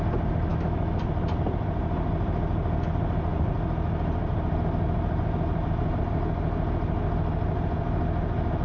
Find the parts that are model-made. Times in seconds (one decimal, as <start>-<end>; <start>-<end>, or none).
0.5-1.0